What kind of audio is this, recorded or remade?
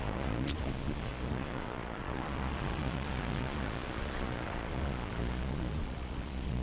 remade